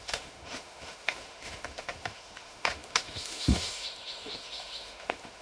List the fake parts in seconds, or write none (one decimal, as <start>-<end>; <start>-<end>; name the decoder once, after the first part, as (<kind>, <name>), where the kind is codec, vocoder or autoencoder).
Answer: 0.0-5.4 (autoencoder, DAC-VAE)